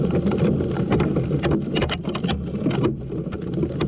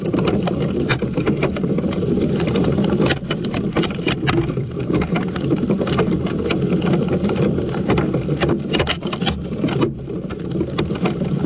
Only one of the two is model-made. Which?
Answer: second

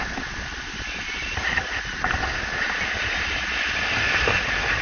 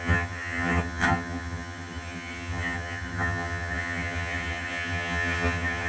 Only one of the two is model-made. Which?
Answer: second